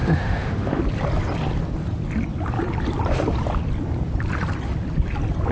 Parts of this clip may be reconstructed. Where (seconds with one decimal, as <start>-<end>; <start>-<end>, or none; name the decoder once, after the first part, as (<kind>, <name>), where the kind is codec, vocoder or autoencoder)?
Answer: 0.0-0.8 (autoencoder, DAC-VAE)